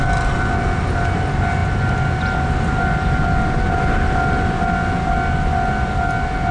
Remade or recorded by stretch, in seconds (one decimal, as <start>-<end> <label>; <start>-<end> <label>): 0.0-6.5 recorded